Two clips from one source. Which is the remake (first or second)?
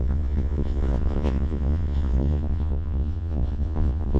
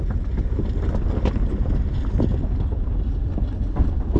first